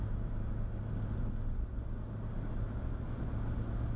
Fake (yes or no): no